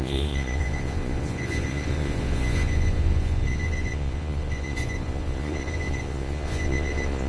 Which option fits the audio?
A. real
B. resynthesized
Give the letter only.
B